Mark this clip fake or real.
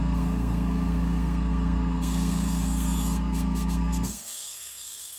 fake